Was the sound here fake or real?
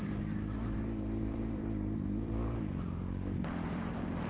fake